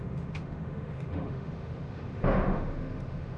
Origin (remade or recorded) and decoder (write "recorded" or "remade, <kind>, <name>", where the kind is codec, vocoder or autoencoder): remade, autoencoder, DAC-VAE